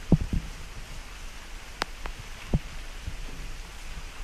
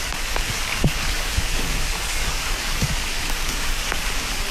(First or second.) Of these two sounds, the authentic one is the first